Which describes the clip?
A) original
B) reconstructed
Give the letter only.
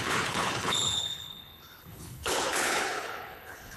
B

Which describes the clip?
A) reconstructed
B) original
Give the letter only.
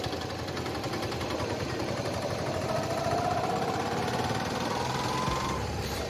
A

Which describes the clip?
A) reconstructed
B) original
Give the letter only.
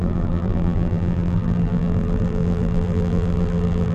A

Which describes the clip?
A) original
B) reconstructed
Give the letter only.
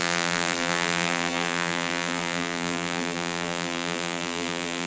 B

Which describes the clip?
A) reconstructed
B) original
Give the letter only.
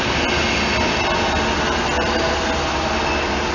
B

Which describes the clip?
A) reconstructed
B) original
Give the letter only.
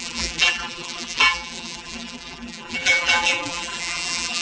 A